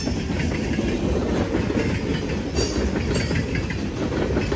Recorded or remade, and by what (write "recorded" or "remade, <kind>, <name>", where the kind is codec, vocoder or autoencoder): recorded